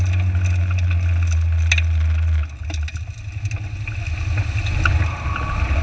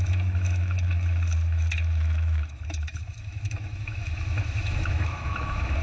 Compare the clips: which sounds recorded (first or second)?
first